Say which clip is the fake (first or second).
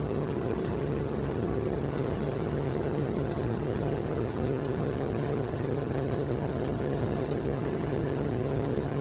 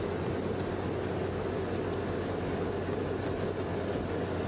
first